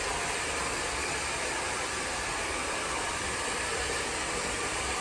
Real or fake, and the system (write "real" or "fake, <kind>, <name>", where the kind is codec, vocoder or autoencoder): fake, vocoder, BigVGAN v2